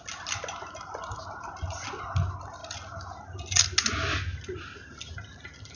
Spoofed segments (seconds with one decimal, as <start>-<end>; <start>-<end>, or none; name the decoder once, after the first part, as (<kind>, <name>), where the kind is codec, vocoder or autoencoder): none

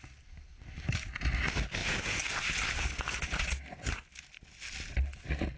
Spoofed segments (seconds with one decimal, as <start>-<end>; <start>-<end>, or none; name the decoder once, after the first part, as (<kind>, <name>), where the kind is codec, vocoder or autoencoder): none

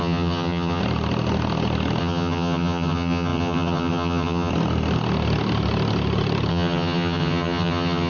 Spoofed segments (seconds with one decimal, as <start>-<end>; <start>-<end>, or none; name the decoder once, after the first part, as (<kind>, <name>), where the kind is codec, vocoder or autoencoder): 0.0-0.8 (vocoder, HiFi-GAN); 2.0-4.5; 6.5-8.1

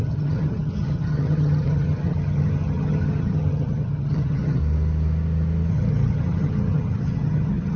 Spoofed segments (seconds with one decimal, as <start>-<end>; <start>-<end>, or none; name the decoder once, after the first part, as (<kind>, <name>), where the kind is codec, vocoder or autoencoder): 0.0-4.6 (vocoder, HiFi-GAN); 5.7-7.8

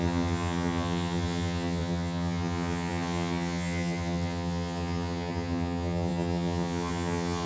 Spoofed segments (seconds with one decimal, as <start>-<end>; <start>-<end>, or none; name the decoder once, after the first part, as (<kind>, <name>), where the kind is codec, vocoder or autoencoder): 0.0-7.5 (vocoder, HiFi-GAN)

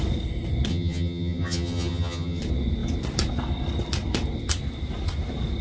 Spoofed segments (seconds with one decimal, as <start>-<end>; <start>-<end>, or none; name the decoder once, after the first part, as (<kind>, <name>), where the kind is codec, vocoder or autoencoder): 0.7-2.4 (vocoder, HiFi-GAN)

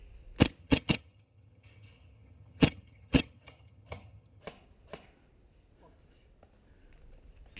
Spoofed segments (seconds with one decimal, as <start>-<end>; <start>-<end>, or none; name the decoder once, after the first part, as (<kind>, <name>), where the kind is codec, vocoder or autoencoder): 0.6-4.4 (vocoder, HiFi-GAN)